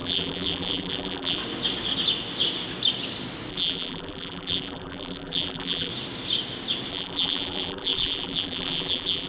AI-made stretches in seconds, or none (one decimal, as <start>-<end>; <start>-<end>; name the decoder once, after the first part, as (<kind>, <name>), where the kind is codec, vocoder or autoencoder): 0.0-1.4 (vocoder, BigVGAN v2); 3.5-5.9; 6.9-9.3